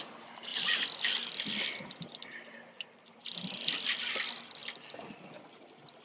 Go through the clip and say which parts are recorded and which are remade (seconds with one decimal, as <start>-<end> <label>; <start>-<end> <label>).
0.0-6.0 recorded